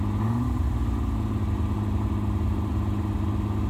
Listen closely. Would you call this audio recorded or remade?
recorded